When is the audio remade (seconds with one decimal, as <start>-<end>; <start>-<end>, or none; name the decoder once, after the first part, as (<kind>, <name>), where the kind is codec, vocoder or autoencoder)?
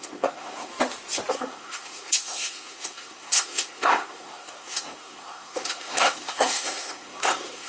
0.0-0.7 (codec, SNAC); 1.3-7.7